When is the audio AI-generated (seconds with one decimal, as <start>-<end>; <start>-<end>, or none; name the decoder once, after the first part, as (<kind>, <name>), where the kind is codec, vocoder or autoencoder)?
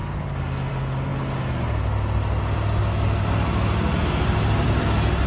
none